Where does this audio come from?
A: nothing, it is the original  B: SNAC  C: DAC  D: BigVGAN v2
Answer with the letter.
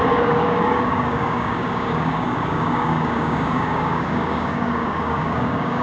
C